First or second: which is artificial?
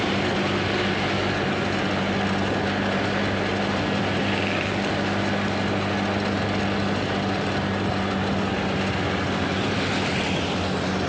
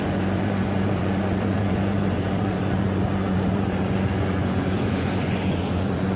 second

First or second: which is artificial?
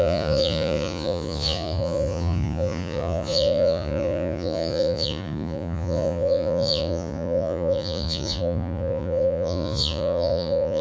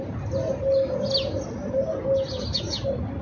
first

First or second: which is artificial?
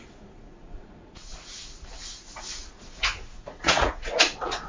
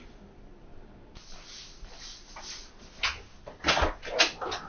first